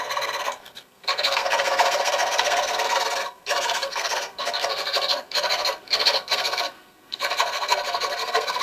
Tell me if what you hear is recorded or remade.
remade